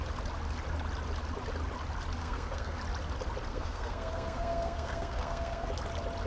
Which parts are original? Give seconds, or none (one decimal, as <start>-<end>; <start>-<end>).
0.0-2.2; 2.8-3.5; 5.7-6.3